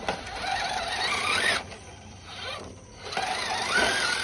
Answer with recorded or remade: recorded